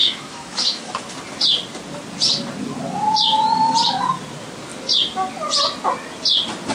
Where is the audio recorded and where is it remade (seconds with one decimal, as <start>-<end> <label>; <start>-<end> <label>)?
0.0-0.9 remade; 0.9-6.7 recorded